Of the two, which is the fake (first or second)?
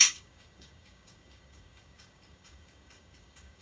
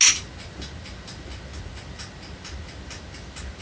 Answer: first